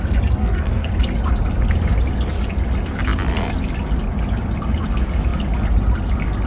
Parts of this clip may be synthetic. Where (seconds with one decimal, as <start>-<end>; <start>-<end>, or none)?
0.4-0.9

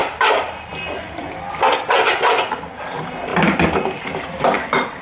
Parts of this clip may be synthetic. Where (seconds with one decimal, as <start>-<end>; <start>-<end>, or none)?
none

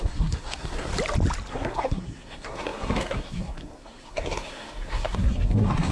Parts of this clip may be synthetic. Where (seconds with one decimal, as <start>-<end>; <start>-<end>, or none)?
0.0-0.9; 1.5-5.9

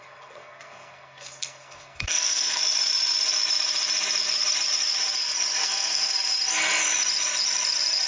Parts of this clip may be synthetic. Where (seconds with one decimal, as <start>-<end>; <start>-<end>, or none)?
0.0-2.6; 5.6-6.1

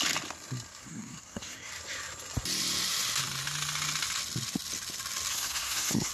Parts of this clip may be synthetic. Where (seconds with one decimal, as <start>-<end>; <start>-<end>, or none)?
0.8-1.7; 5.3-6.1

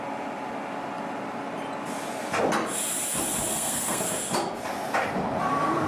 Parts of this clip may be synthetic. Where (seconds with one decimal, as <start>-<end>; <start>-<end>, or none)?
3.5-4.0

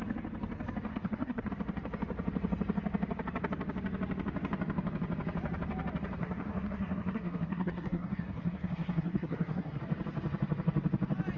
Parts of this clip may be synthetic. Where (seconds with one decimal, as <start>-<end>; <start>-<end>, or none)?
0.9-1.5; 6.2-9.8

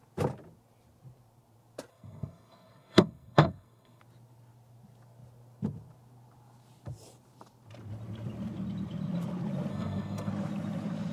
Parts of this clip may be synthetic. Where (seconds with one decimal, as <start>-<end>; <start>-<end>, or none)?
1.9-4.0; 9.7-10.3